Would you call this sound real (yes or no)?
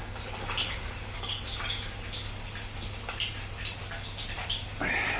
yes